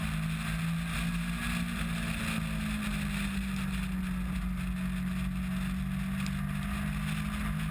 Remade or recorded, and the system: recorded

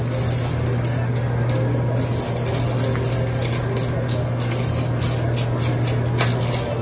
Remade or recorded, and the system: recorded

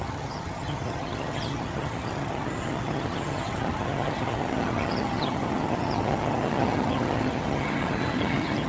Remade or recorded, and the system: remade, vocoder, HiFi-GAN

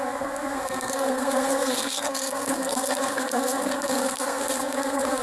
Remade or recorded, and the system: remade, codec, SNAC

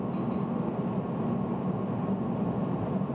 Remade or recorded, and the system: recorded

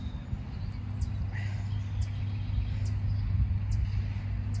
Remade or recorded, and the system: recorded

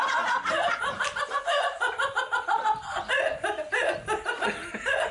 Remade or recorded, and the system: recorded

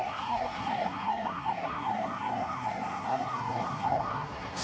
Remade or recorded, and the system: remade, codec, SNAC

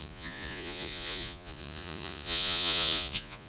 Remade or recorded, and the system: remade, vocoder, Vocos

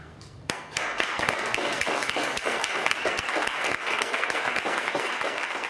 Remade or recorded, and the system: remade, codec, SNAC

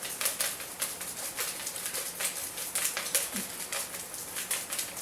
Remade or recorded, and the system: recorded